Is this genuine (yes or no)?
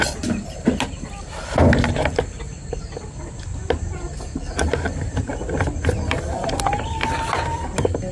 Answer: yes